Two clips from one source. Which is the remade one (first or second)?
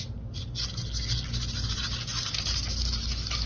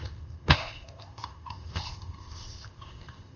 second